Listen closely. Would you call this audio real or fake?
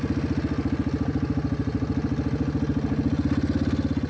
real